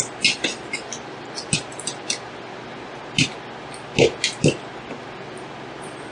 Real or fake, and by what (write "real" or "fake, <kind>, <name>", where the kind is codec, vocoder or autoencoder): real